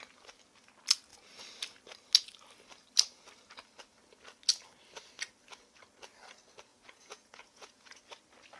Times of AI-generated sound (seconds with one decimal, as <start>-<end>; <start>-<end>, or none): 6.7-8.0